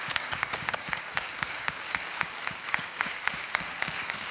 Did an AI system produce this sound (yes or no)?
yes